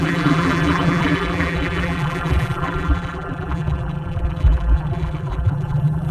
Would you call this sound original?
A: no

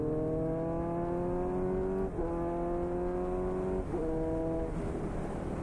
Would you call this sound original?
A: yes